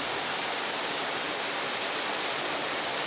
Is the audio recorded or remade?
recorded